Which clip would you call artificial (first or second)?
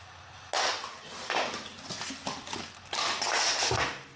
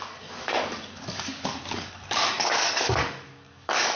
second